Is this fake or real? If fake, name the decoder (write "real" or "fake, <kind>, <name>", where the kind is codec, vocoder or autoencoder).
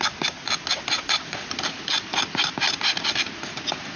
real